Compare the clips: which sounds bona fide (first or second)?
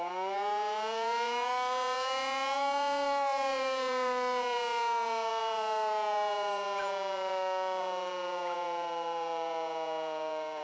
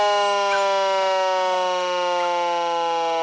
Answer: second